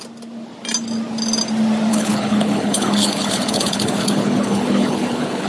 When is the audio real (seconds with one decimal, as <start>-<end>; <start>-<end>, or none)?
0.0-1.9